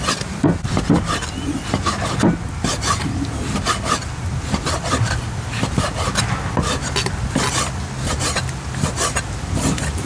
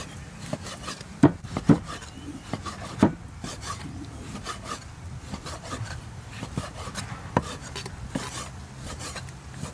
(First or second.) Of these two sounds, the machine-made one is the second